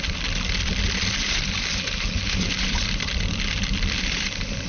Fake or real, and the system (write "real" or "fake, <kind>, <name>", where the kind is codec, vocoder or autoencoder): fake, vocoder, BigVGAN v2